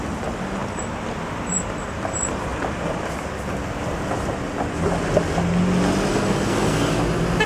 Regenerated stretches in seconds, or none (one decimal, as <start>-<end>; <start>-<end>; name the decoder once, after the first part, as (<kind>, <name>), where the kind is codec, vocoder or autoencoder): 6.1-6.9 (codec, SNAC)